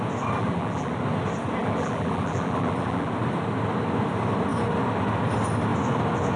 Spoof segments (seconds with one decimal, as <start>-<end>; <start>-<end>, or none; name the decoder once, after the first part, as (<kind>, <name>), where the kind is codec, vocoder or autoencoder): 0.4-0.9 (vocoder, BigVGAN v2); 1.6-3.1